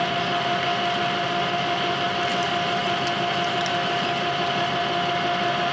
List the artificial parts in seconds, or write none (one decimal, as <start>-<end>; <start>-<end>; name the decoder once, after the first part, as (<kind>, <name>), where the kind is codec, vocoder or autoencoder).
none